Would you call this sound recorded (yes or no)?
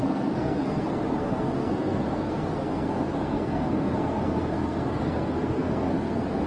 no